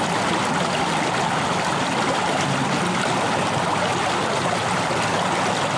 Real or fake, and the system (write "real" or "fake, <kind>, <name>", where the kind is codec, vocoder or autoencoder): real